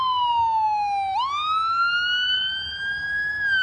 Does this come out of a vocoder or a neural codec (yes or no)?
no